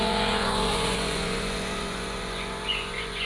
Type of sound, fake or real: fake